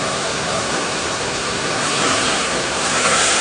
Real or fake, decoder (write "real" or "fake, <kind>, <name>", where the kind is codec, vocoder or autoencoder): fake, codec, SNAC